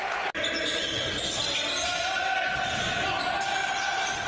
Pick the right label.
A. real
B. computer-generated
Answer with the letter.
A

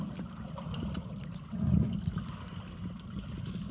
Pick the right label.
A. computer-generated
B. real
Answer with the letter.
B